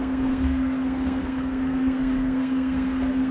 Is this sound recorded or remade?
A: remade